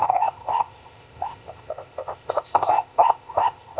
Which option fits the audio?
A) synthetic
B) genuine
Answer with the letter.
A